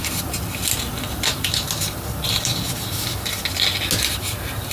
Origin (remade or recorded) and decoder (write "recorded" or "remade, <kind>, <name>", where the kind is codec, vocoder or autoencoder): recorded